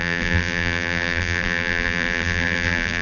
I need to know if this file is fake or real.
fake